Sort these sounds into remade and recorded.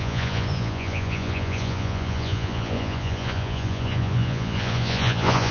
remade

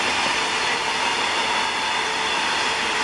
recorded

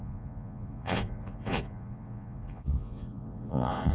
remade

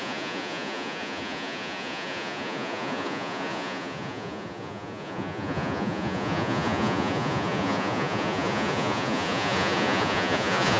remade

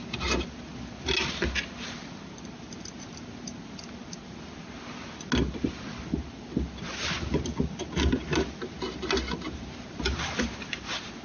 recorded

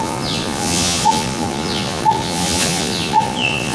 remade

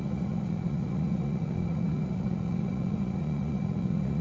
remade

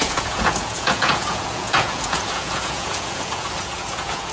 remade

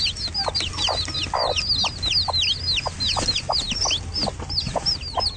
recorded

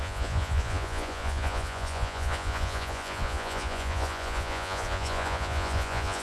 remade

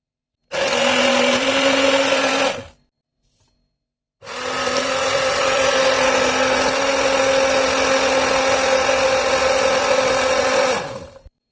recorded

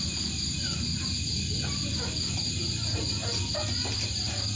recorded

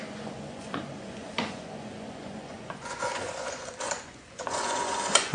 remade